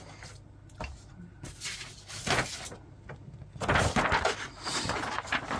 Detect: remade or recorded recorded